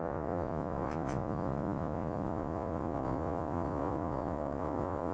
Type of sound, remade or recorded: remade